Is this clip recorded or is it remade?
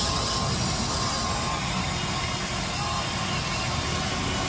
recorded